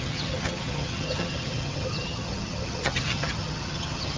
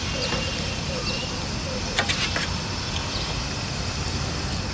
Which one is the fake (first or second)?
first